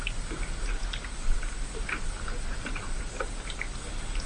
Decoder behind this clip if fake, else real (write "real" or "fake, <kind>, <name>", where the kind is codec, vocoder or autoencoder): real